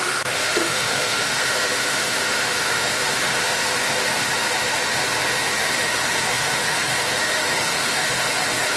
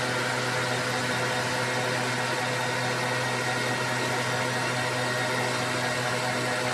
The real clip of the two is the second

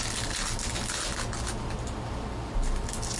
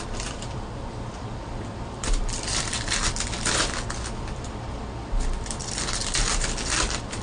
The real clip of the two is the first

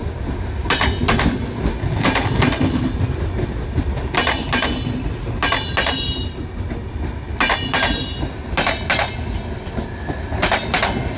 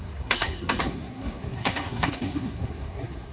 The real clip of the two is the first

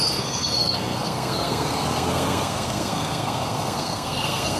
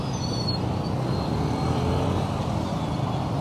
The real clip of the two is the second